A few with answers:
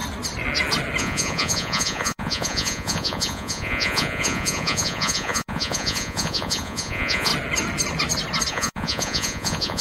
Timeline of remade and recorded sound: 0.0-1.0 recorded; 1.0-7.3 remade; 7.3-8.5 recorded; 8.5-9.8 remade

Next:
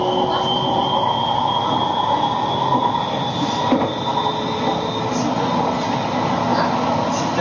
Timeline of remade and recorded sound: 0.0-7.4 recorded

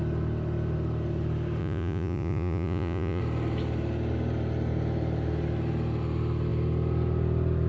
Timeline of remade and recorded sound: 0.0-1.6 recorded; 1.6-3.2 remade; 3.2-7.7 recorded

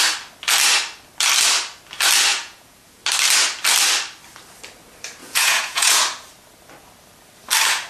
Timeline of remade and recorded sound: 0.0-2.3 recorded; 2.3-3.0 remade; 3.0-5.2 recorded; 5.2-6.0 remade; 6.0-7.9 recorded

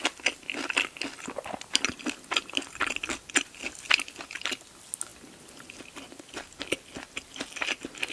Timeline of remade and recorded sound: 0.0-8.1 recorded

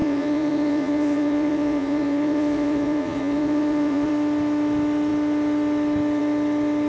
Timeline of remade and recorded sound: 0.0-4.1 remade; 4.1-6.9 recorded

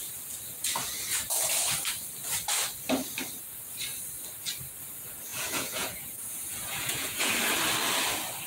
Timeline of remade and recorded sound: 0.0-5.3 recorded; 5.3-7.3 remade; 7.3-8.5 recorded